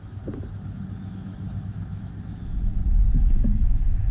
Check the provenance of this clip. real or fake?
fake